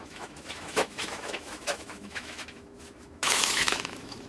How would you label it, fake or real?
fake